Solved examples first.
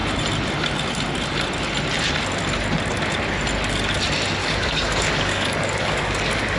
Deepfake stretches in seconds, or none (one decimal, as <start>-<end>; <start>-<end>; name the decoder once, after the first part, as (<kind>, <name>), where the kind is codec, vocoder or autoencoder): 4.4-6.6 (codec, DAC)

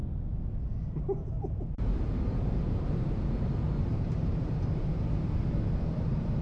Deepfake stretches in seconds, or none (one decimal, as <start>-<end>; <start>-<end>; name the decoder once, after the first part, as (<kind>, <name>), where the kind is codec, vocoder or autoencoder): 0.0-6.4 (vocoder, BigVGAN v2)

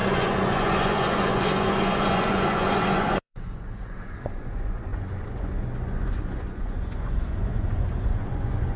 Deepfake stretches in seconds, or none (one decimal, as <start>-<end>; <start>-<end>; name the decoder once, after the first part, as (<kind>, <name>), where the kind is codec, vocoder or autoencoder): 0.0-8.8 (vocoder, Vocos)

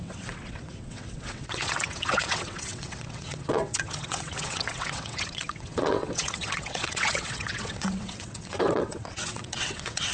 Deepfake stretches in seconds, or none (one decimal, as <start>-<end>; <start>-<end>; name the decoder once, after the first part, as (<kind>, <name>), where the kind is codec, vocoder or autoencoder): 0.0-10.1 (vocoder, WaveNeXt)

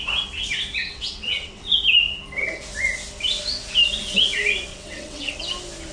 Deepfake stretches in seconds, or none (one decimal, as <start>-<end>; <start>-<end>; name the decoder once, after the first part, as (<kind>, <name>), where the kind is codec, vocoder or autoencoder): 0.8-1.7 (vocoder, WaveNeXt); 4.7-5.4